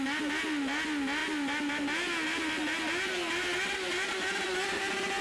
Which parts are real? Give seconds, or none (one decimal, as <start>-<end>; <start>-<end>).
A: 0.0-5.2